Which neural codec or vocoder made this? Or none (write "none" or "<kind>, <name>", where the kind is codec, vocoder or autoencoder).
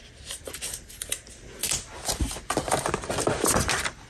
none